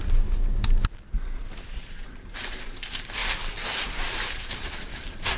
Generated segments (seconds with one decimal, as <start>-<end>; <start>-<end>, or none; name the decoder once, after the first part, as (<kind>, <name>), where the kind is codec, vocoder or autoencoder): 1.7-3.2 (vocoder, BigVGAN v2); 3.8-5.4